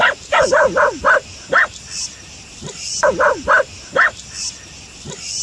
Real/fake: real